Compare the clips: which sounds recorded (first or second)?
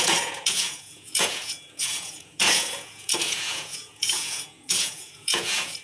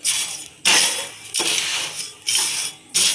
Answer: second